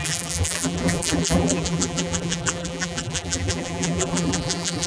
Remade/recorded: remade